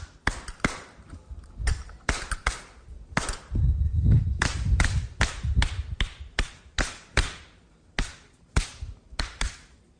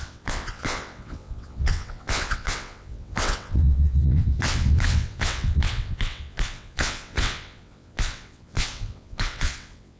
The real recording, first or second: first